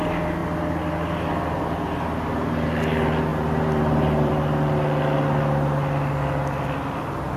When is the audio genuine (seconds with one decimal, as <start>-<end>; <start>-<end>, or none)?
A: 0.0-3.3; 4.3-7.4